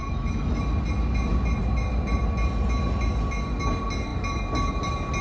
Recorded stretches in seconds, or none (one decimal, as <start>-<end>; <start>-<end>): 0.6-5.2